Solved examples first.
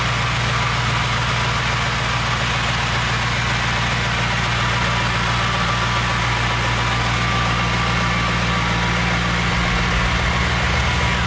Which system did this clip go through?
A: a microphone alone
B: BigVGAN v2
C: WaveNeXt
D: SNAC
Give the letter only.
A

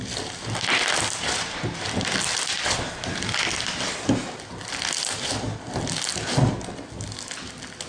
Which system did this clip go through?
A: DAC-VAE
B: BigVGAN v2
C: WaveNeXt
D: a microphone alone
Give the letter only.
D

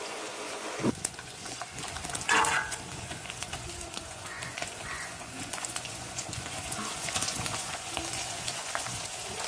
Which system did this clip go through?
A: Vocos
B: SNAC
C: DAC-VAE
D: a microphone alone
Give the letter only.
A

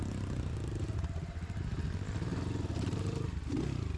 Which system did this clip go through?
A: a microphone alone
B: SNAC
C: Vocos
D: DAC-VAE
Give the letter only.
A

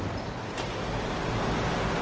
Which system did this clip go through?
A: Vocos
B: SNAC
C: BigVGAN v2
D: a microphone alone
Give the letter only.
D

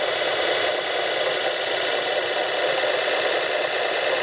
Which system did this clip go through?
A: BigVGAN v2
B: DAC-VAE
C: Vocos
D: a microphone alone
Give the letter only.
D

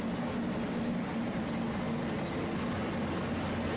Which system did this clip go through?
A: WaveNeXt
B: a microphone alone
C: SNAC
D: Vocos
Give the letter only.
B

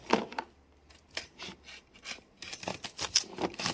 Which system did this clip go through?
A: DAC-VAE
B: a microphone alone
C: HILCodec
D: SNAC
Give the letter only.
B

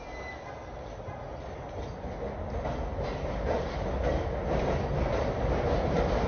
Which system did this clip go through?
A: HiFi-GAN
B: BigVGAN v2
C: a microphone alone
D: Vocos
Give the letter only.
C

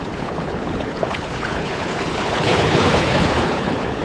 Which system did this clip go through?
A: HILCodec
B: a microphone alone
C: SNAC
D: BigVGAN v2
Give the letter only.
A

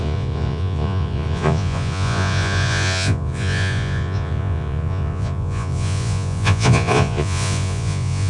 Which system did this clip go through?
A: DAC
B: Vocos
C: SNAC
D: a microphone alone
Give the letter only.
B